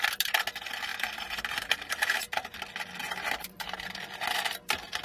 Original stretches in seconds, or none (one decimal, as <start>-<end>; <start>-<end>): 0.0-0.9; 2.6-3.0; 4.0-5.0